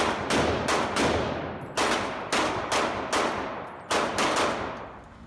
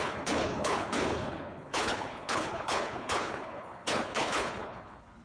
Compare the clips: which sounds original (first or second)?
first